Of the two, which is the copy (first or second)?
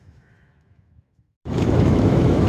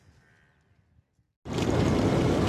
first